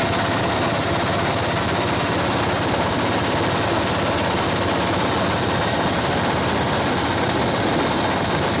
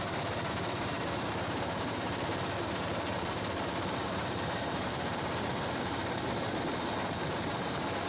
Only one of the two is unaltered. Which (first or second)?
first